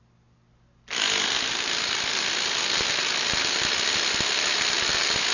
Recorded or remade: recorded